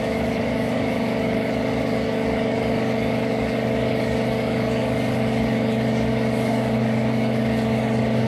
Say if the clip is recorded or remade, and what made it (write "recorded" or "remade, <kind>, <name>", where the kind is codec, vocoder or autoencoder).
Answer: remade, codec, DAC